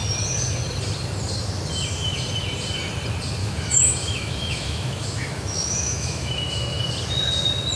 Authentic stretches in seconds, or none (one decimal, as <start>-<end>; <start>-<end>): 0.0-3.4; 6.8-7.8